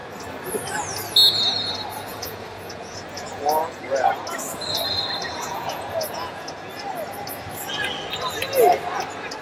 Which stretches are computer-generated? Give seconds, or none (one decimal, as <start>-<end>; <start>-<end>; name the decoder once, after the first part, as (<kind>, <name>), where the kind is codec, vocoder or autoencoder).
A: 2.1-4.2 (vocoder, Vocos); 5.2-6.7